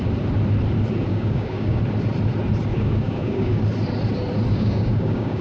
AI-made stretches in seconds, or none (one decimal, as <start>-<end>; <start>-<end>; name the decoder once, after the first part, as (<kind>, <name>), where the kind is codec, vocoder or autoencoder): 1.1-1.8 (codec, DAC); 2.7-3.6; 4.5-5.4